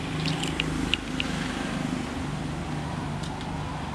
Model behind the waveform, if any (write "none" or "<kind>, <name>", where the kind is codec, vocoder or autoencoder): none